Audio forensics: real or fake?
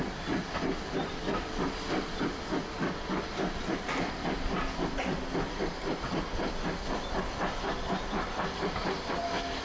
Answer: fake